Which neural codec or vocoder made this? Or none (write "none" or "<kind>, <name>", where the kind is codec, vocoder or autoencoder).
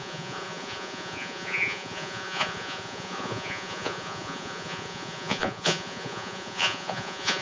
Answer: vocoder, Vocos